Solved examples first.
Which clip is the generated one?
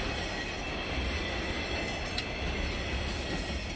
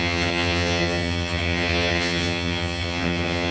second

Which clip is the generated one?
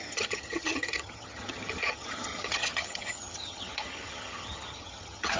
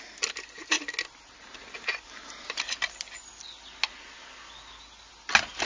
first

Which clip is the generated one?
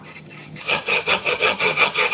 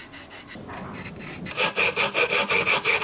first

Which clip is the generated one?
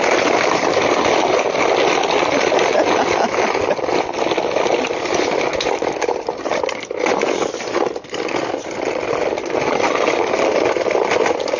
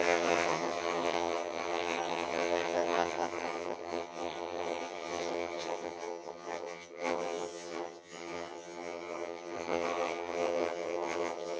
second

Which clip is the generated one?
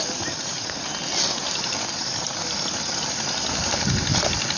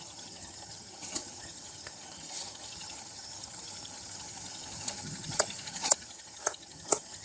second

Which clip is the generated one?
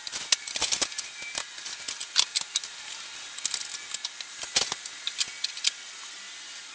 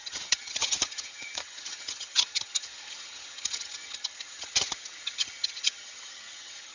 second